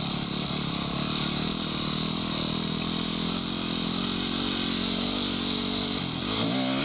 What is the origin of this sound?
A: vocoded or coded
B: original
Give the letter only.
B